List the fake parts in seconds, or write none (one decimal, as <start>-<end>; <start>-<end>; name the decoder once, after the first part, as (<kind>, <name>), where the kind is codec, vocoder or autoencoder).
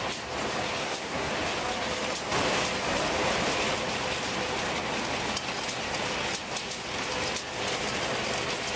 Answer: 0.8-1.3 (codec, SNAC)